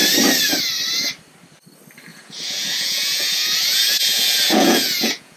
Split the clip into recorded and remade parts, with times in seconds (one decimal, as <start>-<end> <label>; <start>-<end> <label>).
0.0-2.1 recorded; 2.1-5.4 remade